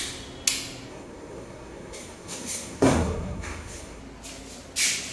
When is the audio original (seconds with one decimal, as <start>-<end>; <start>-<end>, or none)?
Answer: 0.0-0.9; 4.0-5.1